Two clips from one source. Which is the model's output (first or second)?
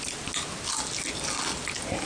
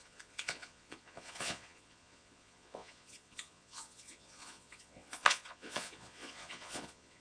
second